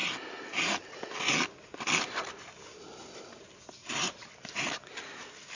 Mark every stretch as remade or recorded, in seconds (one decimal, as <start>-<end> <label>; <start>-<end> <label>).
0.0-3.8 recorded; 3.8-4.6 remade; 4.6-5.6 recorded